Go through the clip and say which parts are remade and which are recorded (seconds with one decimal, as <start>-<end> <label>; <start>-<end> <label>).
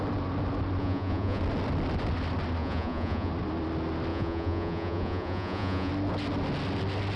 0.0-0.8 recorded; 0.8-1.4 remade; 1.4-2.6 recorded; 2.6-3.3 remade; 3.3-4.1 recorded; 4.1-5.9 remade; 5.9-7.2 recorded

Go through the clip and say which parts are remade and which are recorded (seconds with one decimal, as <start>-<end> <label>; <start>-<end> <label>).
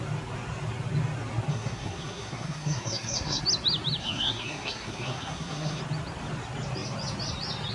0.0-1.5 recorded; 1.5-3.4 remade; 3.4-4.0 recorded; 4.0-5.8 remade; 5.8-7.7 recorded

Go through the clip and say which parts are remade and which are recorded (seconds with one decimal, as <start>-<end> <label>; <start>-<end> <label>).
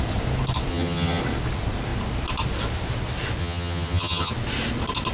0.0-0.7 recorded; 0.7-1.2 remade; 1.2-3.4 recorded; 3.4-4.3 remade; 4.3-5.1 recorded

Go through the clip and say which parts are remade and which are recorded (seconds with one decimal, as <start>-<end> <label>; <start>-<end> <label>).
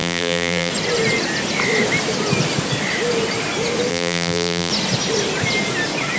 0.0-0.7 remade; 0.7-3.9 recorded; 3.9-4.7 remade; 4.7-6.2 recorded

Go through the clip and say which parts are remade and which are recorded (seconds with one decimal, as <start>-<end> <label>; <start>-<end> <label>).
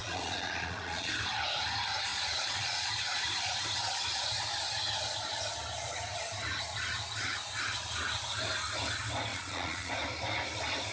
0.0-1.1 remade; 1.1-2.1 recorded; 2.1-2.9 remade; 2.9-9.3 recorded; 9.3-9.9 remade; 9.9-10.9 recorded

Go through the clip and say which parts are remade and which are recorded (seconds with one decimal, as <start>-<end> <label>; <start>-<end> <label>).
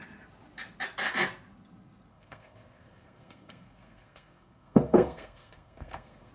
0.0-2.1 recorded; 2.1-6.3 remade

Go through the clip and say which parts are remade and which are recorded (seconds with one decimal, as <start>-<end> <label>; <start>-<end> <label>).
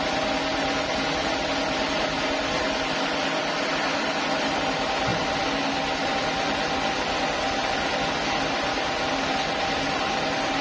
0.0-10.6 recorded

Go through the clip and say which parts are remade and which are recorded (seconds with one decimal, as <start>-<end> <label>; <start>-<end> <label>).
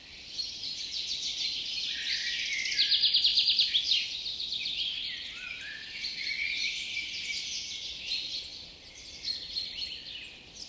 0.0-3.3 recorded; 3.3-4.5 remade; 4.5-8.5 recorded; 8.5-9.8 remade; 9.8-10.7 recorded